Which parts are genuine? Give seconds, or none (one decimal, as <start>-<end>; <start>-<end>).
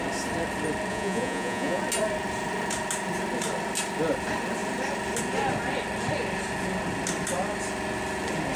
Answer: 0.0-0.9; 1.8-8.6